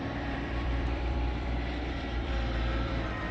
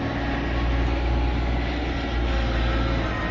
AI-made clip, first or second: first